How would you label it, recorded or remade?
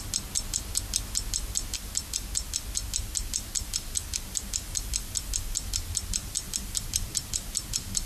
recorded